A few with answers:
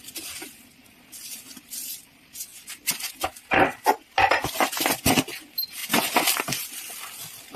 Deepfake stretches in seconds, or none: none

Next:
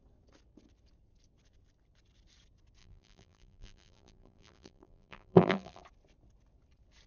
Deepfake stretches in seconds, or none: 2.8-5.8 (vocoder, BigVGAN v2)

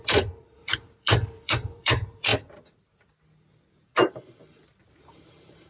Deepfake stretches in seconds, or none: 0.0-2.3 (vocoder, BigVGAN v2); 4.9-5.7

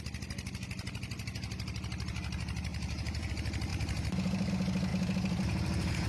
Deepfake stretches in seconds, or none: 2.7-3.3 (vocoder, BigVGAN v2); 3.7-4.5; 4.9-6.1

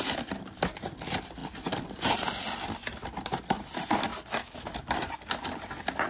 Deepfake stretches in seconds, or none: 0.0-4.1 (vocoder, BigVGAN v2)